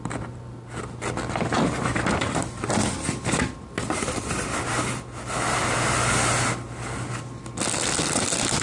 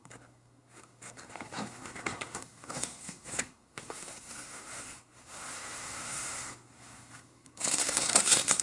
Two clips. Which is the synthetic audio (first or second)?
second